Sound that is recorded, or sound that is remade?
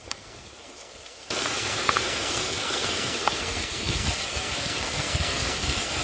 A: remade